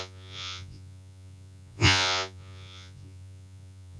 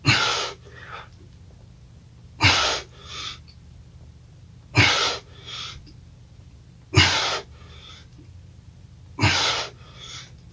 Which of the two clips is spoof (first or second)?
first